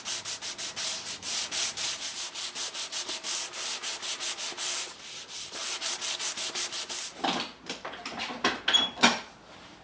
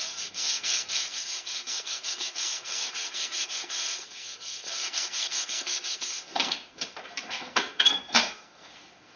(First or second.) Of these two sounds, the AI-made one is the second